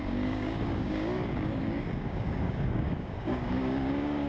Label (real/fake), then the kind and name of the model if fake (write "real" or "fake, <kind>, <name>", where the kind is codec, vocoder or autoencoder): fake, codec, DAC